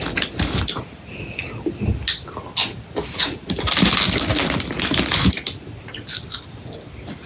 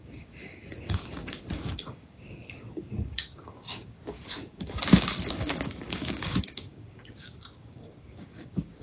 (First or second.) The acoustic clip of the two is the first